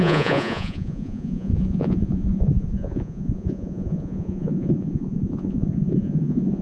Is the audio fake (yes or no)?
yes